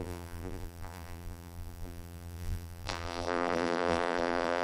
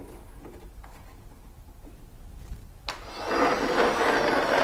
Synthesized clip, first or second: first